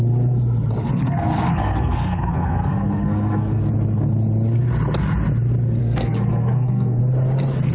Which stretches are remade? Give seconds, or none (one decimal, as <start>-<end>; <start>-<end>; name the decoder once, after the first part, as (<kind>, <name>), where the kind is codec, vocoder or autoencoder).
0.8-3.6 (codec, SNAC); 5.8-7.0